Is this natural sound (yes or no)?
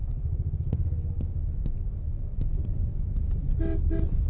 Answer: yes